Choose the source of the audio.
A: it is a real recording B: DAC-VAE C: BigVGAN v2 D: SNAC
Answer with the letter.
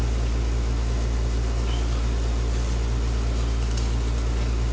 A